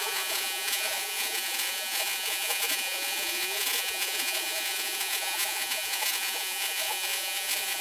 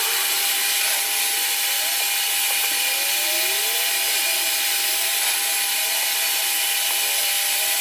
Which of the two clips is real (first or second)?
second